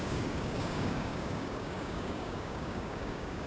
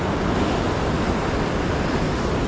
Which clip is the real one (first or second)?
second